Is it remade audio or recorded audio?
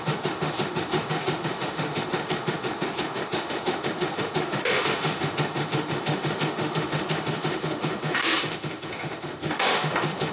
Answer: remade